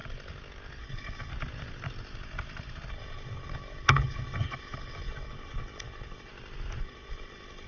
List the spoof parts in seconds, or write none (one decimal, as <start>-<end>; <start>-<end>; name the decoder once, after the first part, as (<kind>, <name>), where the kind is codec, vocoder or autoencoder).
0.8-1.3 (codec, HILCodec); 2.9-6.3; 6.8-7.7